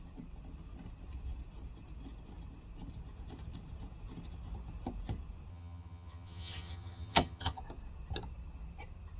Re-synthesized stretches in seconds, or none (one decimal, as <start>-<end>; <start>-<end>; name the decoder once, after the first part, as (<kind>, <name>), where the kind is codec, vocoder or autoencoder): 5.5-7.6 (vocoder, HiFi-GAN)